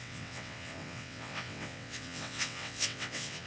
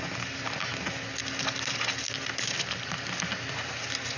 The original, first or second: second